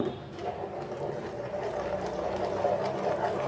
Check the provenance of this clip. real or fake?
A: real